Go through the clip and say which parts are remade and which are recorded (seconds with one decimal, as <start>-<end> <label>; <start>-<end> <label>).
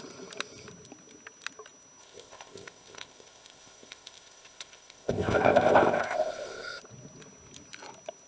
0.0-2.0 recorded; 2.0-6.8 remade; 6.8-8.3 recorded